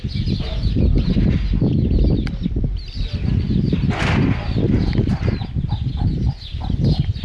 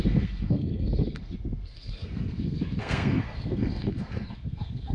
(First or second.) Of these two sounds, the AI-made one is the second